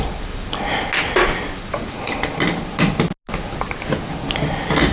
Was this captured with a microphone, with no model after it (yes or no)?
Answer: yes